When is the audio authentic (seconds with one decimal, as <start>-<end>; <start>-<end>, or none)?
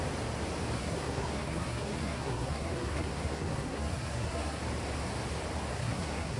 0.0-0.8; 4.6-5.7